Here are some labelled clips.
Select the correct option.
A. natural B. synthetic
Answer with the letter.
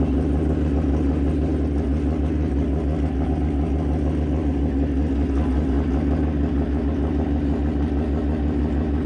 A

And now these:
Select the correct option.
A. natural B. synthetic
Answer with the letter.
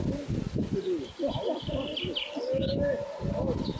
A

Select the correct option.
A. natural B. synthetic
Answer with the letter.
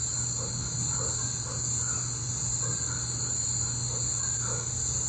A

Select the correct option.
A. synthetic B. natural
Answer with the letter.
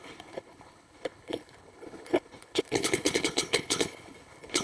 A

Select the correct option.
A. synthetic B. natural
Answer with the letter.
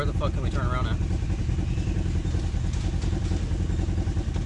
B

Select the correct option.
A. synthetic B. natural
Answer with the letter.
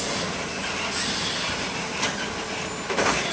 B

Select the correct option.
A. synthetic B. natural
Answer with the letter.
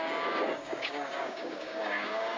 A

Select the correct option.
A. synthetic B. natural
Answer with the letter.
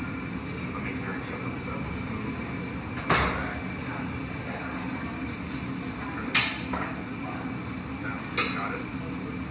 B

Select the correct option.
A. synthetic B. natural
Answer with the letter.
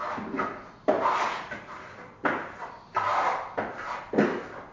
B